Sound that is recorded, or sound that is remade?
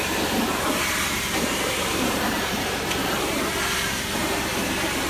remade